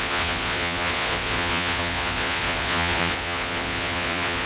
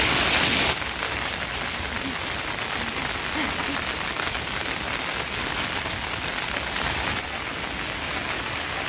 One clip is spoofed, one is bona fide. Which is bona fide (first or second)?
second